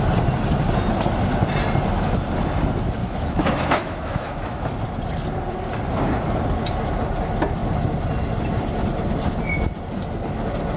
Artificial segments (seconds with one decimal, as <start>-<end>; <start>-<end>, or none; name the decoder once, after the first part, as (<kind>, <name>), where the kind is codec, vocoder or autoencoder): 3.0-4.6 (autoencoder, DAC-VAE)